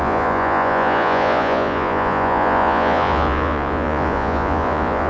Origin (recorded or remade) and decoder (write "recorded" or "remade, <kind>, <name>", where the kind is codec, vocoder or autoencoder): remade, vocoder, Vocos